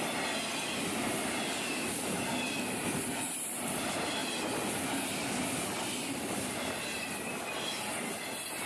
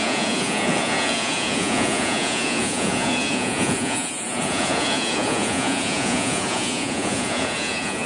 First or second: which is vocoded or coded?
second